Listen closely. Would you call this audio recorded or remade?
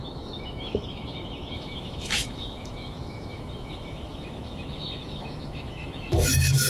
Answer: remade